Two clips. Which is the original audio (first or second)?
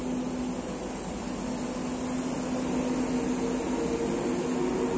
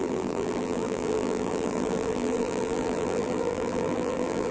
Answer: first